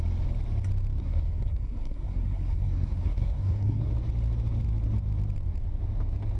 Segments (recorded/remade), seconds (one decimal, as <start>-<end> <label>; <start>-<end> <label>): 0.0-1.0 recorded; 1.0-3.9 remade; 3.9-6.4 recorded